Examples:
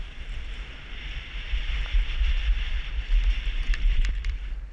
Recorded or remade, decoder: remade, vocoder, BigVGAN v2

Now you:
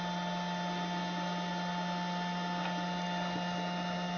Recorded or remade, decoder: recorded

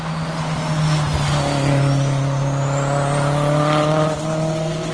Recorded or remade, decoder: recorded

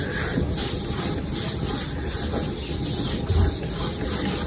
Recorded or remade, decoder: recorded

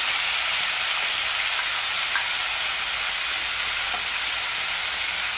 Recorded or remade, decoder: recorded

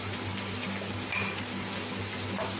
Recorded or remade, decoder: recorded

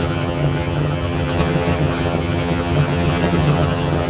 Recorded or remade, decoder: remade, vocoder, HiFi-GAN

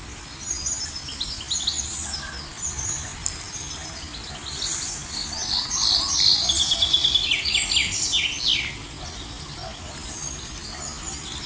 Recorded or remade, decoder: recorded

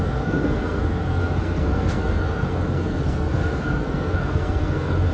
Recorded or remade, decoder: remade, codec, SNAC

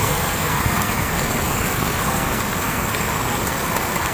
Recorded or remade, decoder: remade, codec, SNAC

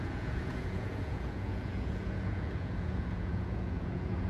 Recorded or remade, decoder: remade, vocoder, Vocos